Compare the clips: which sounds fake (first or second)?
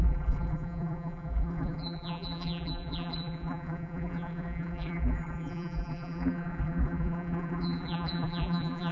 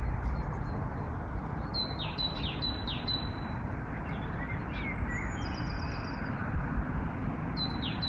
first